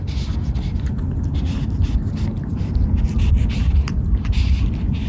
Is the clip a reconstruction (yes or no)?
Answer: no